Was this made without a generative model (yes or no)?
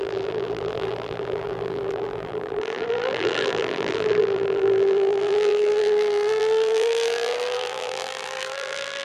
no